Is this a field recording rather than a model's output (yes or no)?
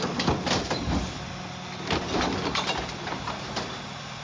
yes